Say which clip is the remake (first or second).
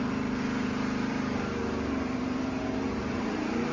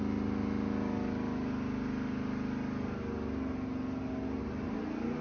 first